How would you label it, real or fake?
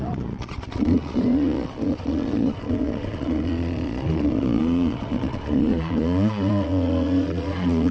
fake